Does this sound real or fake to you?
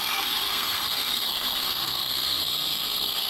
fake